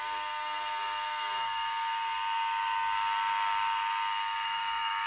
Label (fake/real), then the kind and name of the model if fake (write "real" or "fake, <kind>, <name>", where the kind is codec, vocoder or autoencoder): fake, codec, DAC